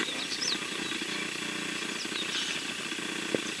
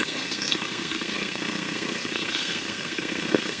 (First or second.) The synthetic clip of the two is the second